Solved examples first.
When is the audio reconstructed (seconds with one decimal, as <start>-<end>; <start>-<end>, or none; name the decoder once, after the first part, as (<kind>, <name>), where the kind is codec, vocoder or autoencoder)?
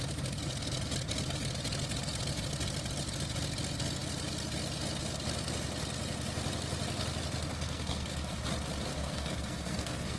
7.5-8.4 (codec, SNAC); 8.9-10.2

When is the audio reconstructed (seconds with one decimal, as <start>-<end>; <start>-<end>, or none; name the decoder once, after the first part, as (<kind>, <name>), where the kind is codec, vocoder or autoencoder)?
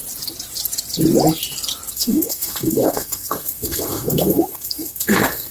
1.9-5.5 (codec, SNAC)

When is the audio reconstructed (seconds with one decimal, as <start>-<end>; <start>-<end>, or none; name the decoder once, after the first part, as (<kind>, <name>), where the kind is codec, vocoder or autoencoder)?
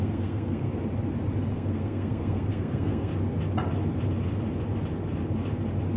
0.0-0.7 (codec, SNAC); 1.5-3.1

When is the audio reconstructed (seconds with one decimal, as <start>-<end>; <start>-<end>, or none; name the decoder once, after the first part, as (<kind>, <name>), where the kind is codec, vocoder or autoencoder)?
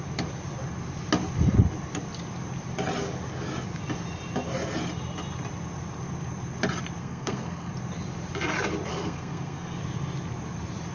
7.0-7.7 (codec, SNAC); 8.9-9.8